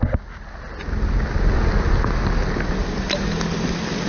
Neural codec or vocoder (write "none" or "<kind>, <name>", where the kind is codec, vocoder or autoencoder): none